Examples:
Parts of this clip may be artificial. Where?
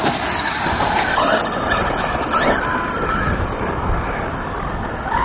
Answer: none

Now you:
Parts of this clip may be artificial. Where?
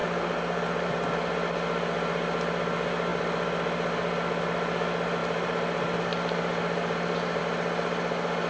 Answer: 0.0-0.9 (vocoder, BigVGAN v2); 5.2-7.4